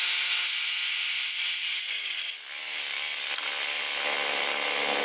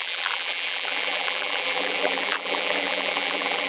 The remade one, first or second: second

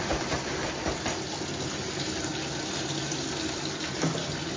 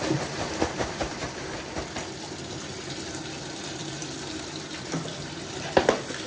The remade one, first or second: second